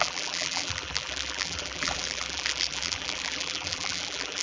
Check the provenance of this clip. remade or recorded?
remade